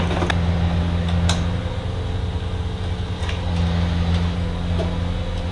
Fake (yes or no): no